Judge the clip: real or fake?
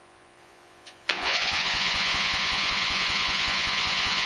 fake